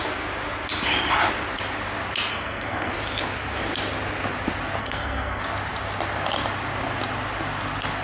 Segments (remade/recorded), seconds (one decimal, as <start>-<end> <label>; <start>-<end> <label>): 0.0-2.3 recorded; 2.3-2.9 remade; 2.9-4.8 recorded; 4.8-5.4 remade; 5.4-8.0 recorded

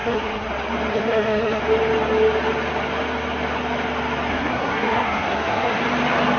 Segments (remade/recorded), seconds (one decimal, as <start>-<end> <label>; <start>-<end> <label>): 0.0-0.5 remade; 0.5-0.9 recorded; 0.9-1.6 remade; 1.6-4.3 recorded; 4.3-5.8 remade; 5.8-6.4 recorded

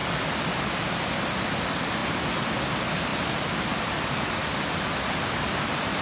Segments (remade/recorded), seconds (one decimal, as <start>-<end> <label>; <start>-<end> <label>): 0.0-6.0 recorded

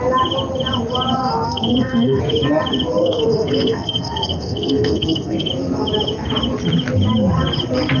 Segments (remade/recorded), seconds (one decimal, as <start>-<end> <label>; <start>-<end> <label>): 0.0-1.2 recorded; 1.2-2.2 remade; 2.2-3.0 recorded; 3.0-5.5 remade; 5.5-8.0 recorded

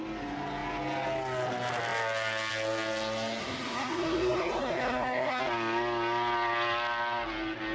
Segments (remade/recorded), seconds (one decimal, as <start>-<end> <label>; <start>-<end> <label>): 0.0-3.4 recorded; 3.4-5.4 remade; 5.4-7.7 recorded